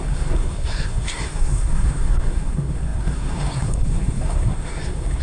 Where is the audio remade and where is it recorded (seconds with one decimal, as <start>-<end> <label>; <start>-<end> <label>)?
0.0-5.2 remade